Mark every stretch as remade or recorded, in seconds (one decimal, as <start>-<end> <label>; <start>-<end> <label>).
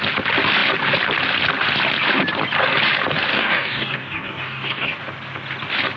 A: 0.0-3.3 recorded; 3.3-5.0 remade; 5.0-6.0 recorded